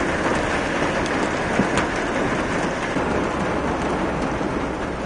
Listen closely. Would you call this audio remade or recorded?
recorded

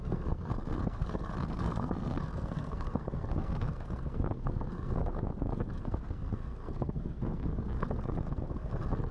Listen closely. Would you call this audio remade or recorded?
remade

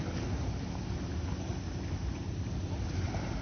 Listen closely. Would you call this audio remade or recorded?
recorded